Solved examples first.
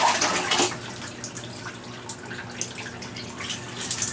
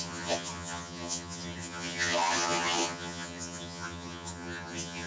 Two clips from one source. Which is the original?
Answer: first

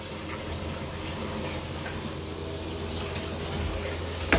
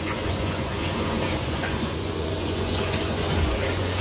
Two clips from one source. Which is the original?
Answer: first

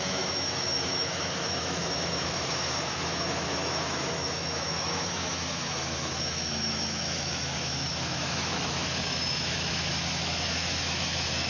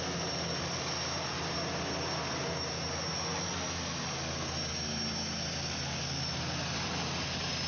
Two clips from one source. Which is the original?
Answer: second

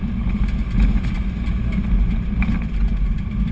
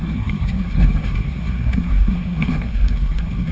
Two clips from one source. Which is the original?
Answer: first